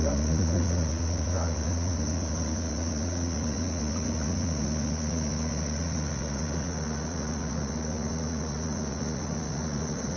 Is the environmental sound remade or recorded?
remade